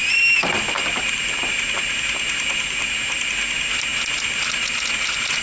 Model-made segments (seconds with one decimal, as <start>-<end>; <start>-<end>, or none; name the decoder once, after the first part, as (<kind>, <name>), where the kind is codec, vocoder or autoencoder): none

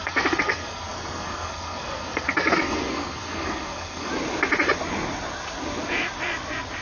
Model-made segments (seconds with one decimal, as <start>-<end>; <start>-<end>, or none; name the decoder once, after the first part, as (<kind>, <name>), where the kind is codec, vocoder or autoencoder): 0.0-4.1 (codec, SNAC)